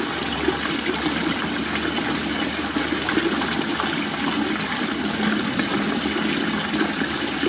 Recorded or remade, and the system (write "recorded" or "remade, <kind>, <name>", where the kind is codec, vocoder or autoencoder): recorded